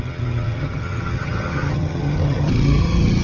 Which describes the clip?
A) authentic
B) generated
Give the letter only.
B